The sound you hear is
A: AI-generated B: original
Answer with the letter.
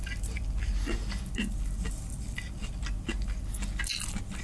B